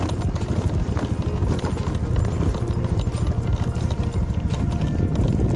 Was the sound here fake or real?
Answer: real